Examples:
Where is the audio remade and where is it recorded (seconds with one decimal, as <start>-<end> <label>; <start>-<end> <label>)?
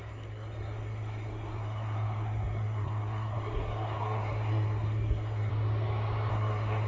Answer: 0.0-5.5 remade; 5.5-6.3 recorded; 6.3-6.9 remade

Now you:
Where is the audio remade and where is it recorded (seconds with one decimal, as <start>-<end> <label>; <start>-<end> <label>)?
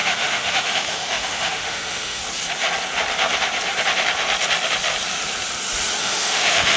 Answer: 0.0-2.2 remade; 2.2-6.0 recorded; 6.0-6.8 remade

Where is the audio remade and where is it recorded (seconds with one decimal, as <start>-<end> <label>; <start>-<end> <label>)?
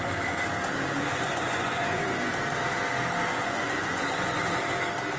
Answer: 0.0-1.1 recorded; 1.1-2.3 remade; 2.3-3.3 recorded; 3.3-4.4 remade; 4.4-5.2 recorded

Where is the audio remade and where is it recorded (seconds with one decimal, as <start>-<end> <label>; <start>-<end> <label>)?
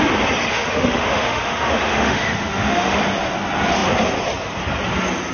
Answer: 0.0-0.5 recorded; 0.5-3.0 remade; 3.0-5.3 recorded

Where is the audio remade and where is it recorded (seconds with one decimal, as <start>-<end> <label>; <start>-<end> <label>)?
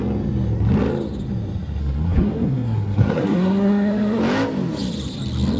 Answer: 0.0-1.8 recorded; 1.8-4.2 remade; 4.2-5.6 recorded